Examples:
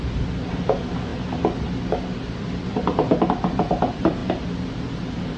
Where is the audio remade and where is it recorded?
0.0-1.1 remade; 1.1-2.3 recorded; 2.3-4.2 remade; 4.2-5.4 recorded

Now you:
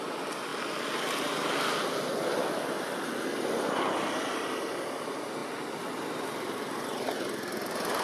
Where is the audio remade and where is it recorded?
0.0-8.0 recorded

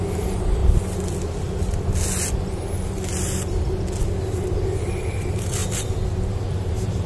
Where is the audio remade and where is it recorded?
0.0-0.6 remade; 0.6-4.8 recorded; 4.8-5.6 remade; 5.6-6.5 recorded; 6.5-7.1 remade

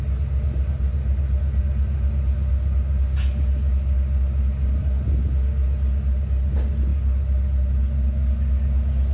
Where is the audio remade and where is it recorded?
0.0-9.1 recorded

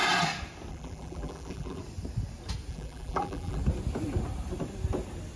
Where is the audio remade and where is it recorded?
0.0-0.7 recorded; 0.7-1.8 remade; 1.8-2.7 recorded; 2.7-3.6 remade; 3.6-5.4 recorded

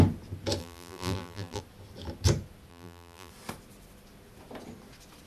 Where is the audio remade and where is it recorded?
0.0-0.6 recorded; 0.6-1.6 remade; 1.6-2.7 recorded; 2.7-3.3 remade; 3.3-5.3 recorded